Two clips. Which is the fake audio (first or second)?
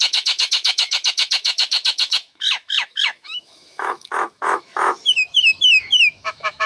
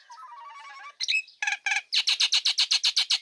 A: first